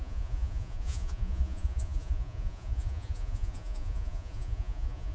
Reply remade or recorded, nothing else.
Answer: remade